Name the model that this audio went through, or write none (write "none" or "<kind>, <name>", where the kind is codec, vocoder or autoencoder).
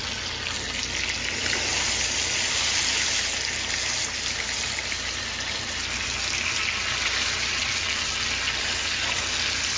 none